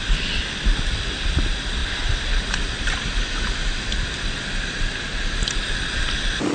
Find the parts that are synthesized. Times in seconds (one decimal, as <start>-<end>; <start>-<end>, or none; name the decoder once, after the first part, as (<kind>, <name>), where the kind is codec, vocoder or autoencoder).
0.0-6.5 (vocoder, BigVGAN v2)